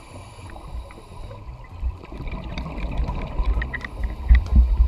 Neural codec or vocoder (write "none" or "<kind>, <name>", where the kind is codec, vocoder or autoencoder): none